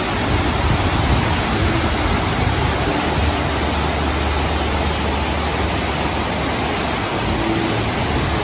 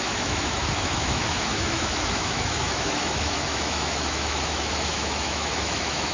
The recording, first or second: first